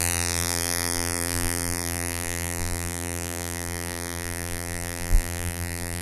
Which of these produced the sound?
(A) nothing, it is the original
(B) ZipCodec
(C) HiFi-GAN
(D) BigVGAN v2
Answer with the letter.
D